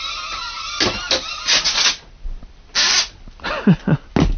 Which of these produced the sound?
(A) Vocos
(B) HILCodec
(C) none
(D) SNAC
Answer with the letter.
C